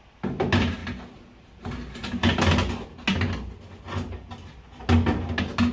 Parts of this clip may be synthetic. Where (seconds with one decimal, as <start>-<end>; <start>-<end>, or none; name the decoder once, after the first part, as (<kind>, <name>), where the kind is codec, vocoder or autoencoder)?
none